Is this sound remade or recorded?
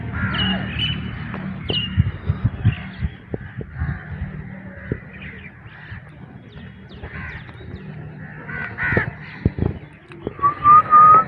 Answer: recorded